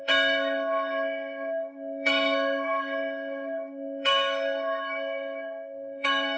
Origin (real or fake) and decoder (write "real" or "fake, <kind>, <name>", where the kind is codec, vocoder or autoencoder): fake, codec, SNAC